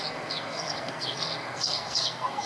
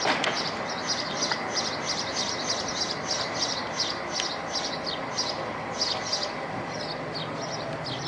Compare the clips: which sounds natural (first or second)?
second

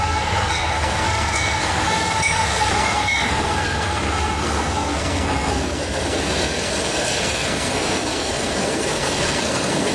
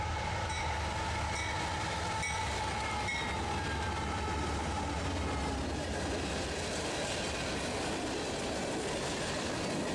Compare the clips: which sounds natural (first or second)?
second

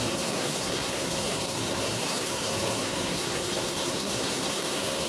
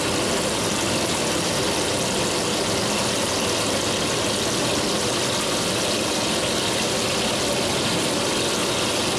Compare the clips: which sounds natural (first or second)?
second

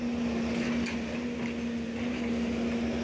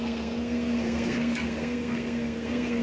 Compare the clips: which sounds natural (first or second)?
first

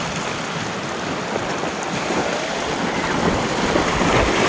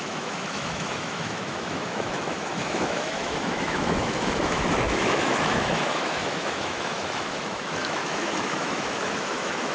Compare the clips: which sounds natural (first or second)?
first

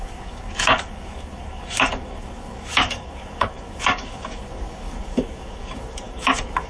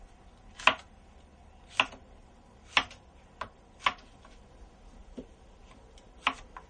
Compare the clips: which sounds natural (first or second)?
second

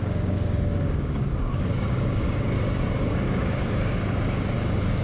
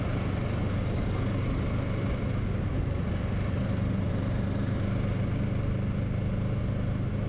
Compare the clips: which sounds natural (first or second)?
second